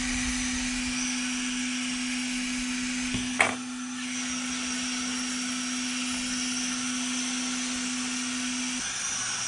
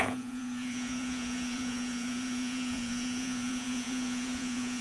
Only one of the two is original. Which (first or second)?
first